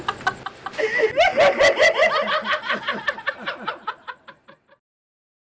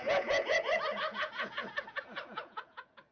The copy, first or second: second